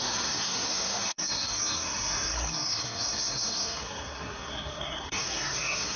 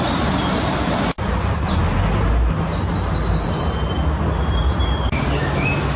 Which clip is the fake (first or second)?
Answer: first